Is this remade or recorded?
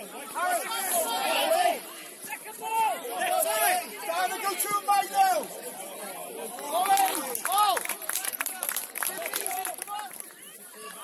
remade